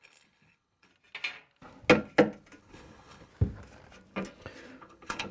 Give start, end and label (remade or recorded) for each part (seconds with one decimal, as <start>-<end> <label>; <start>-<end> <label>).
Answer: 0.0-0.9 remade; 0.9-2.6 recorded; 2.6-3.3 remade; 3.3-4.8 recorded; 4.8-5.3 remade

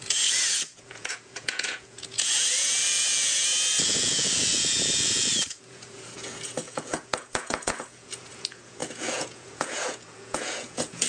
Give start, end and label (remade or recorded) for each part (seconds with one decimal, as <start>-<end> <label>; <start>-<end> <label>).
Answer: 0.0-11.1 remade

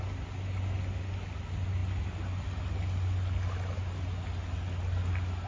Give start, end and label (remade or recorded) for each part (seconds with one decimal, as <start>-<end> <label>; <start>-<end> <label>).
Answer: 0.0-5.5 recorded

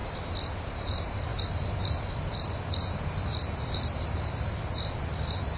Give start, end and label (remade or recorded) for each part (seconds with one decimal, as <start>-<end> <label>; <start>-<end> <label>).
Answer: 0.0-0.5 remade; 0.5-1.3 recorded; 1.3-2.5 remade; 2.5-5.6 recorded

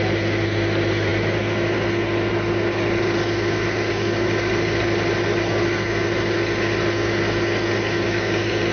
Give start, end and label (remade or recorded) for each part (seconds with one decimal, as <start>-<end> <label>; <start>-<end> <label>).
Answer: 0.0-8.7 recorded

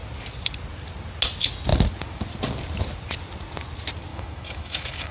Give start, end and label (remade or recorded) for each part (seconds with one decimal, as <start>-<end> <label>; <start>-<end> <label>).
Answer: 0.0-4.1 recorded; 4.1-5.1 remade

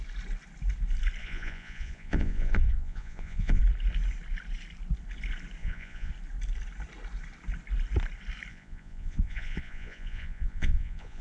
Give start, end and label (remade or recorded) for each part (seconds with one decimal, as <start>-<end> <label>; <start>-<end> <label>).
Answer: 0.0-1.2 recorded; 1.2-3.6 remade; 3.6-5.6 recorded; 5.6-6.1 remade; 6.1-8.5 recorded; 8.5-11.2 remade